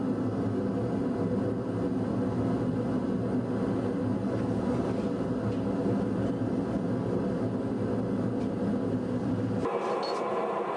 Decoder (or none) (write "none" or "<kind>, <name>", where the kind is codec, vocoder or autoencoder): none